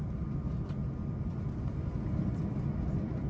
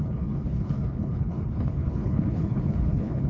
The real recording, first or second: first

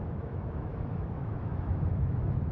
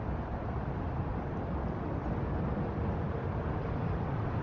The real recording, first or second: second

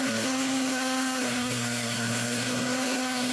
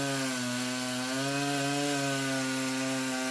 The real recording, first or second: second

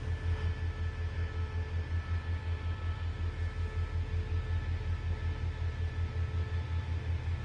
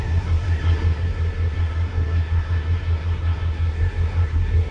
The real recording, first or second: first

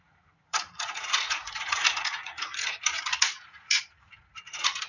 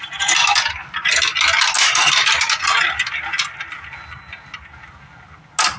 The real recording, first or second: second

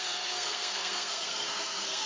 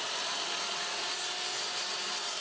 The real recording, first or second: second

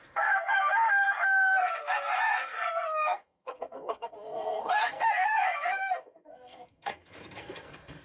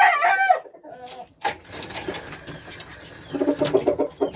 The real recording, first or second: second